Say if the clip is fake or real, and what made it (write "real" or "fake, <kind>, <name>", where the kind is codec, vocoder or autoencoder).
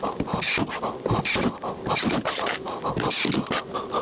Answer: real